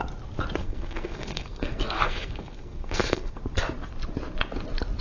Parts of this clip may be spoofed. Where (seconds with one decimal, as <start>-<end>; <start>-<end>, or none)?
0.6-3.4